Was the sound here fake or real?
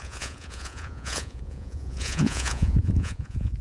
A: fake